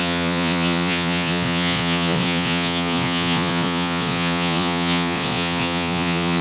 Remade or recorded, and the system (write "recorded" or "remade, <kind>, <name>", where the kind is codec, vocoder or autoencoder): remade, vocoder, Vocos